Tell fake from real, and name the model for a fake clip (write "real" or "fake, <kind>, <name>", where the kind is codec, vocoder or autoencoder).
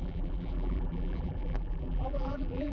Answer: fake, vocoder, BigVGAN v2